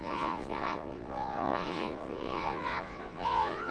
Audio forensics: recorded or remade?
remade